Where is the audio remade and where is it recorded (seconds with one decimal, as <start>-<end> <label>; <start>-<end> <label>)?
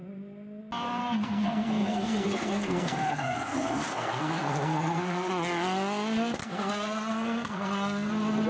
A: 0.0-1.0 recorded; 1.0-5.3 remade; 5.3-6.4 recorded; 6.4-8.1 remade; 8.1-8.5 recorded